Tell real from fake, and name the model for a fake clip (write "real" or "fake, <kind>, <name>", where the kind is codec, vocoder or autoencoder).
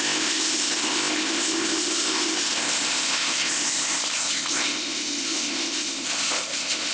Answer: fake, codec, ZipCodec